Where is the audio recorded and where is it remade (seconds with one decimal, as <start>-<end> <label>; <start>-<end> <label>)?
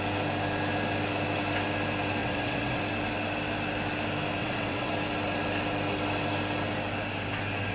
0.0-2.2 recorded; 2.2-2.8 remade; 2.8-4.4 recorded; 4.4-4.9 remade; 4.9-7.7 recorded